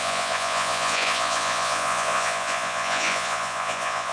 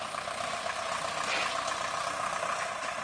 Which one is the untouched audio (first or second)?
second